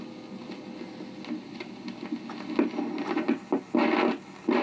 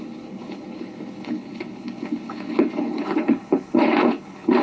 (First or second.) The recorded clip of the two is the first